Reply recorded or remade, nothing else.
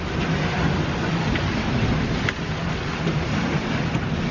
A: recorded